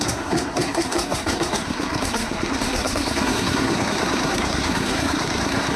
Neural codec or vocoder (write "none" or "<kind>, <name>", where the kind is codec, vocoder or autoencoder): codec, SNAC